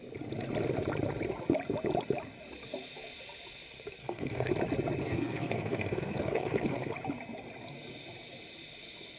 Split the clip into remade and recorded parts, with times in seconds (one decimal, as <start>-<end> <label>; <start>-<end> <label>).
0.0-4.0 recorded; 4.0-4.5 remade; 4.5-5.0 recorded; 5.0-6.9 remade; 6.9-9.2 recorded